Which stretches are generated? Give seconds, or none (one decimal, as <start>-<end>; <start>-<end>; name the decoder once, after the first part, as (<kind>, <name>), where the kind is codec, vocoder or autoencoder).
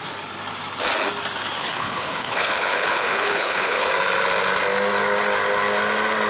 1.6-3.9 (codec, HILCodec)